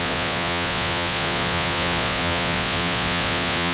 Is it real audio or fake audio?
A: fake